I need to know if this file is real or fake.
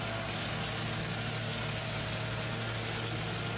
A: real